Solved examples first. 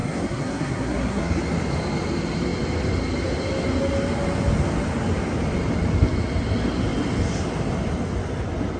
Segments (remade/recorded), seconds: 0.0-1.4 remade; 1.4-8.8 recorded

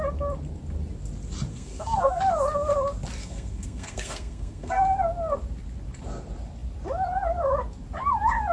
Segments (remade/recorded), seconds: 0.0-1.5 recorded; 1.5-2.2 remade; 2.2-3.2 recorded; 3.2-4.8 remade; 4.8-8.5 recorded

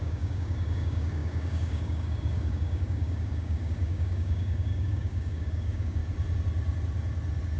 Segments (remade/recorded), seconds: 0.0-6.0 remade; 6.0-7.6 recorded

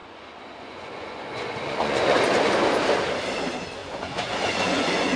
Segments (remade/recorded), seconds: 0.0-2.2 remade; 2.2-3.8 recorded; 3.8-5.2 remade

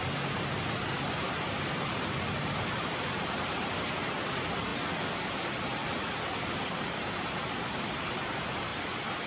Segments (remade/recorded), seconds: 0.0-4.7 remade; 4.7-5.3 recorded; 5.3-5.8 remade; 5.8-6.6 recorded; 6.6-8.7 remade; 8.7-9.3 recorded

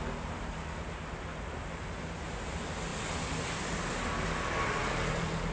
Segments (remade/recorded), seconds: 0.0-4.8 recorded; 4.8-5.5 remade

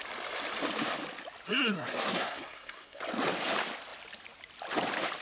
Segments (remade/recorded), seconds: 0.0-1.5 recorded; 1.5-3.0 remade; 3.0-5.2 recorded

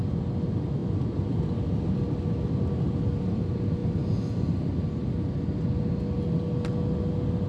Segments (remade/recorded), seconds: 0.0-7.5 recorded